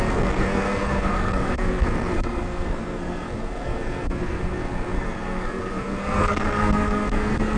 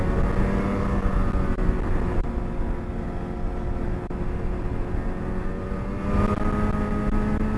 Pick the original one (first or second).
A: second